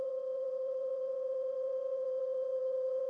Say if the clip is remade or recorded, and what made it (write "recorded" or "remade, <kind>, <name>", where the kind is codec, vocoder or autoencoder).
remade, vocoder, WaveNeXt